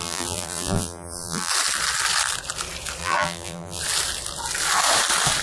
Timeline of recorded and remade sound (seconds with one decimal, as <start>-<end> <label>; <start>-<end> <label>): 0.0-1.5 remade; 1.5-3.0 recorded; 3.0-3.8 remade; 3.8-5.4 recorded

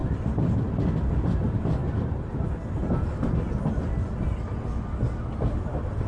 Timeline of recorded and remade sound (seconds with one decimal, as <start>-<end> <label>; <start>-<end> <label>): 0.0-0.9 remade; 0.9-6.1 recorded

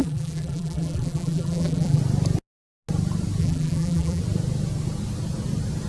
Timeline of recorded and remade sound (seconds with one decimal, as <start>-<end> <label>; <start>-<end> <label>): 0.0-2.0 remade; 2.0-3.4 recorded; 3.4-4.2 remade; 4.2-5.9 recorded

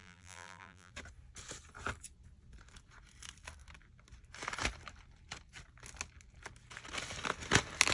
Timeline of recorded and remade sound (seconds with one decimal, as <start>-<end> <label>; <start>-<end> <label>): 0.0-0.9 remade; 0.9-7.9 recorded

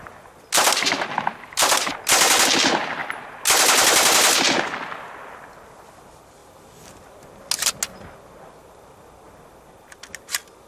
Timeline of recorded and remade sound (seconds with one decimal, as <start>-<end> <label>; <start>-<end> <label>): 0.0-10.7 recorded

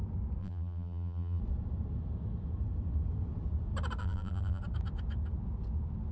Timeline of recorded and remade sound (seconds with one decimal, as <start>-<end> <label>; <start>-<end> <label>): 0.0-0.4 recorded; 0.4-1.4 remade; 1.4-4.0 recorded; 4.0-4.6 remade; 4.6-6.1 recorded

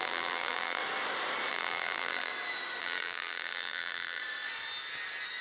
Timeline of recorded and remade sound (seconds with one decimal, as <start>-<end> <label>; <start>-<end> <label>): 0.0-0.8 remade; 0.8-1.5 recorded; 1.5-2.3 remade; 2.3-2.8 recorded; 2.8-4.2 remade; 4.2-5.4 recorded

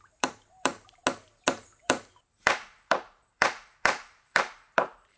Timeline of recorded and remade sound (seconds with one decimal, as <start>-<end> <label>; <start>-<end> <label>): 0.0-1.0 remade; 1.0-1.8 recorded; 1.8-5.2 remade